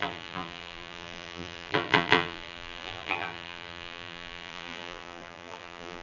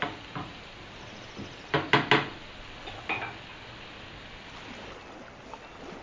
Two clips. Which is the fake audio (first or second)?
first